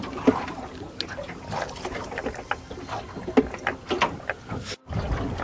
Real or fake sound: real